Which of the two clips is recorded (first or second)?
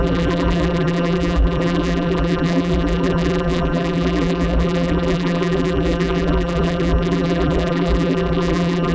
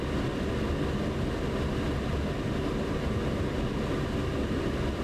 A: second